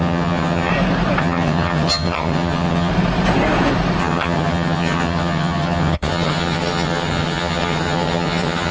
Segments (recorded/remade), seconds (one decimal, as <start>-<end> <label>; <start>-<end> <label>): 0.0-0.7 remade; 0.7-1.2 recorded; 1.2-2.9 remade; 2.9-4.0 recorded; 4.0-8.7 remade